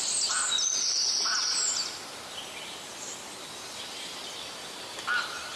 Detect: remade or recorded recorded